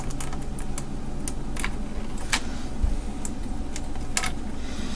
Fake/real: real